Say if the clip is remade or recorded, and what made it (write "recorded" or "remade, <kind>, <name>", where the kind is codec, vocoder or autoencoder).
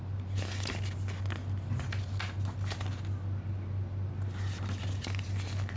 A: recorded